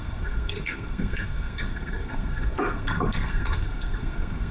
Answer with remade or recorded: remade